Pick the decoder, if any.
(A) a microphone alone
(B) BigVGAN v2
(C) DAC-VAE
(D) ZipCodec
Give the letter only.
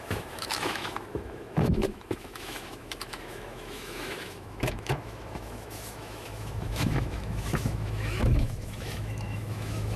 C